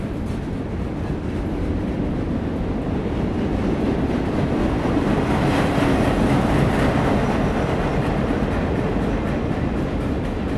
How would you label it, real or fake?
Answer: real